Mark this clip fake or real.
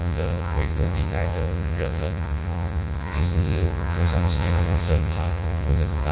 fake